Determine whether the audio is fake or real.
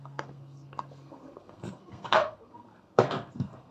fake